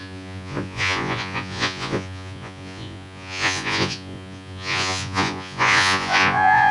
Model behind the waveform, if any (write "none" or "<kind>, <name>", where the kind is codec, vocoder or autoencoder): vocoder, Vocos